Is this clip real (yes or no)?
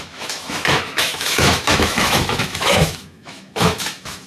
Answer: no